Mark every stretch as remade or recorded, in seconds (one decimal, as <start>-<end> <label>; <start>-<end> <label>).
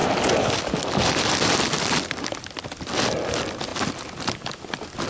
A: 0.0-5.1 recorded